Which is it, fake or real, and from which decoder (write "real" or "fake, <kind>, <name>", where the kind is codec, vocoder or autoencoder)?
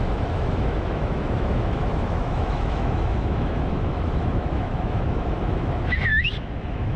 fake, autoencoder, DAC-VAE